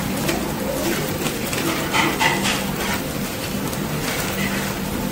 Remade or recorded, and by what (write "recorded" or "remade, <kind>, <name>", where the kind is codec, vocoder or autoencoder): recorded